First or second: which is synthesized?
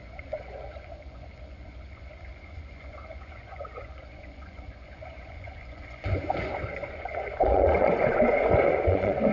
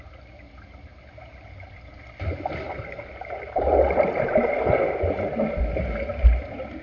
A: first